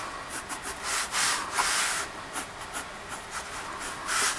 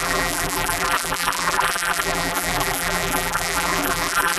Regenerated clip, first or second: second